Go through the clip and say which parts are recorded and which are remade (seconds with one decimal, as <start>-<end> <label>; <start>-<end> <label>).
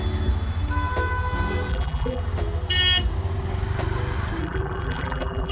0.0-1.7 recorded; 1.7-2.2 remade; 2.2-4.4 recorded; 4.4-5.5 remade